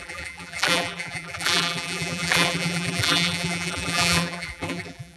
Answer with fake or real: fake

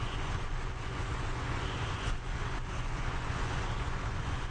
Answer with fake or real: fake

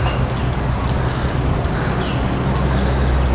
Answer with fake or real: real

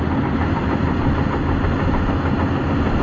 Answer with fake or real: real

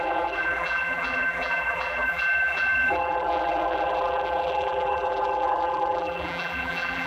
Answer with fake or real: fake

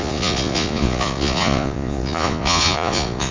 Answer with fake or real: fake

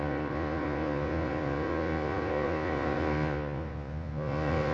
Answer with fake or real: fake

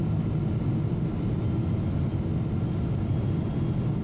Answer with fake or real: real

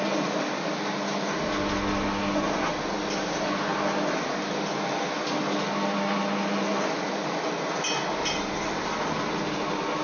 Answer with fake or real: real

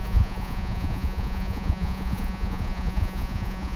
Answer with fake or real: fake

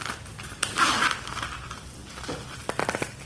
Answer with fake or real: real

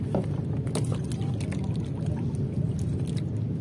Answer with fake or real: real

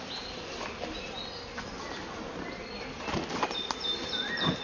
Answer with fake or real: real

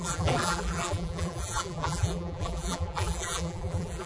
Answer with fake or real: fake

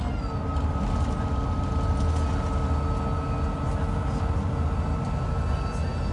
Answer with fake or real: real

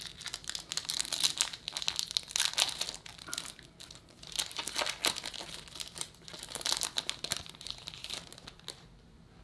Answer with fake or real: real